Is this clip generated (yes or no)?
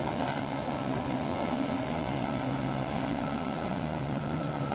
yes